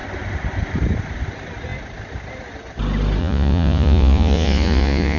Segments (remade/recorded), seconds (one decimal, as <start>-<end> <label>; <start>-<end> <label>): 0.0-3.2 recorded; 3.2-5.2 remade